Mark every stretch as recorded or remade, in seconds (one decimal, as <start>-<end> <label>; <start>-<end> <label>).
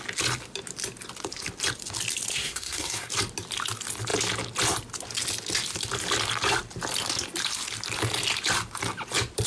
0.0-2.3 recorded; 2.3-3.1 remade; 3.1-9.5 recorded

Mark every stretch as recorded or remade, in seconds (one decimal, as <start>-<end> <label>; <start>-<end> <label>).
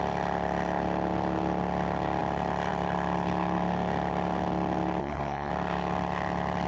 0.0-5.0 recorded; 5.0-5.5 remade; 5.5-6.7 recorded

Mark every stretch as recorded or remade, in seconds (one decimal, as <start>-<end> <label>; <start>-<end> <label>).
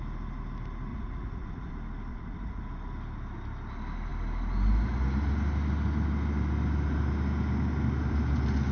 0.0-0.9 recorded; 0.9-1.7 remade; 1.7-2.1 recorded; 2.1-2.6 remade; 2.6-8.7 recorded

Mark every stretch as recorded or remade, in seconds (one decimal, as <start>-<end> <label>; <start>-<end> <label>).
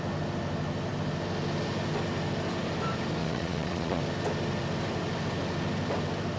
0.0-3.2 recorded; 3.2-4.0 remade; 4.0-6.4 recorded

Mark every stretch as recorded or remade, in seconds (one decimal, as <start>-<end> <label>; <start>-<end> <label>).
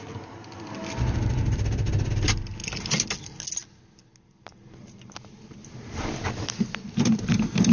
0.0-7.7 recorded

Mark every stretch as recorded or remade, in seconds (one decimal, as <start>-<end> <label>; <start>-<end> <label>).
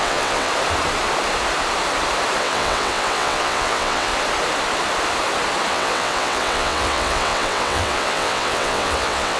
0.0-0.5 remade; 0.5-2.4 recorded; 2.4-4.1 remade; 4.1-5.7 recorded; 5.7-9.4 remade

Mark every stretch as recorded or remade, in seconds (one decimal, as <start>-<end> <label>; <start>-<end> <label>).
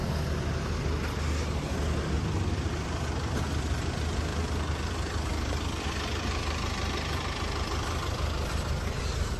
0.0-2.5 recorded; 2.5-9.4 remade